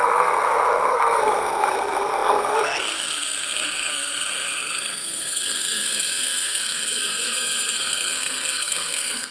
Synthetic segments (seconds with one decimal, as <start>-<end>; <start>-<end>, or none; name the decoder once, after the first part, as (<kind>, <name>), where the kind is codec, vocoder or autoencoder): 0.0-9.3 (codec, SNAC)